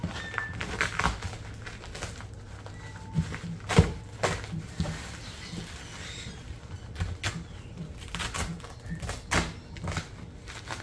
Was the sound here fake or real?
real